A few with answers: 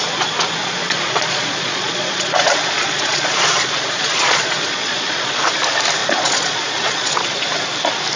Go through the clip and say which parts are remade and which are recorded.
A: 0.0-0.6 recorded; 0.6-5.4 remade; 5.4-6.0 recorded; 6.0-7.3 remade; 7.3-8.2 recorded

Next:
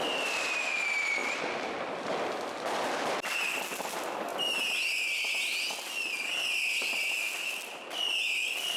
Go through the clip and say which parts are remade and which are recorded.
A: 0.0-8.8 recorded

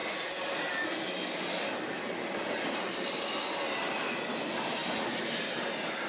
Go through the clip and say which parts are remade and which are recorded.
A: 0.0-6.1 recorded

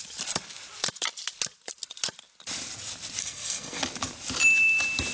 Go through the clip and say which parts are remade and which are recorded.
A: 0.0-3.2 recorded; 3.2-3.8 remade; 3.8-5.1 recorded

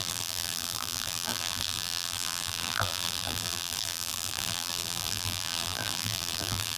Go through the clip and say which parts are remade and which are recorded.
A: 0.0-6.8 remade